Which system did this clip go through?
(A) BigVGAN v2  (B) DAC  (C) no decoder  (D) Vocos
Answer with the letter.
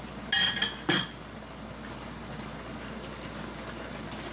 C